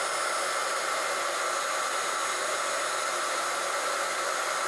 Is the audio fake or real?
real